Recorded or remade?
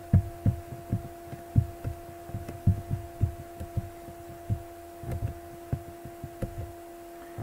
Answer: recorded